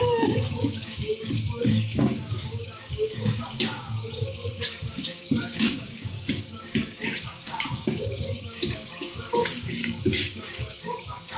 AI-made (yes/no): yes